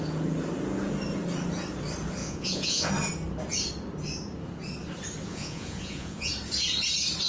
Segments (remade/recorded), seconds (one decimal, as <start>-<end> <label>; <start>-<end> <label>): 0.0-2.2 recorded; 2.2-2.9 remade; 2.9-5.3 recorded; 5.3-6.3 remade; 6.3-7.3 recorded